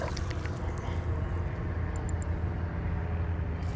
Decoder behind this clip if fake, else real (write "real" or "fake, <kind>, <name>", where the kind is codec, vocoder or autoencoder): real